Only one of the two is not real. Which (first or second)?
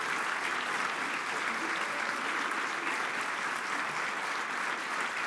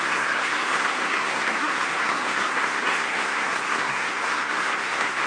second